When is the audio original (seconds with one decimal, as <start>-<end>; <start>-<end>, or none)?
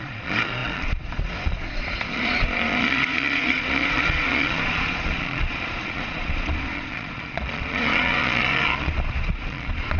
none